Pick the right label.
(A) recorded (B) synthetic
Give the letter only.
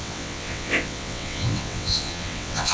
B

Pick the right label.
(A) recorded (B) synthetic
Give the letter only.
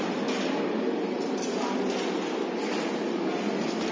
A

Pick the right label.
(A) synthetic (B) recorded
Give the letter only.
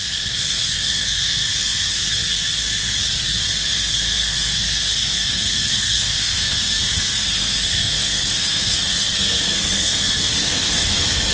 A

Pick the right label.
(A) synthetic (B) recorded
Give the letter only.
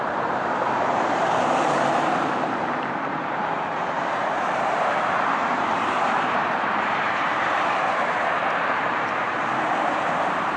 A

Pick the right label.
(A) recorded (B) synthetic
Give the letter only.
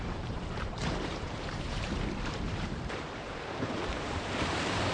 B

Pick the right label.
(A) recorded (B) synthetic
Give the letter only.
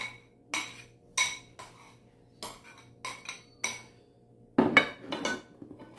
A